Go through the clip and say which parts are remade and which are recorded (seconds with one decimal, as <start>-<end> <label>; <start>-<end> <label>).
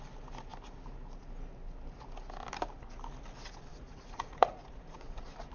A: 0.0-3.7 recorded; 3.7-5.5 remade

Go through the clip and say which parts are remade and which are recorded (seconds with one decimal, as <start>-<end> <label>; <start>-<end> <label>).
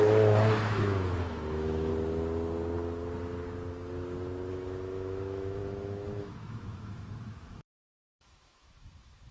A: 0.0-1.9 remade; 1.9-4.5 recorded; 4.5-9.3 remade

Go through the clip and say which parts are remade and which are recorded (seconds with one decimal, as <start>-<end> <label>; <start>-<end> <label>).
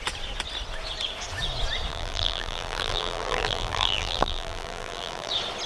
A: 0.0-1.9 recorded; 1.9-5.3 remade; 5.3-5.7 recorded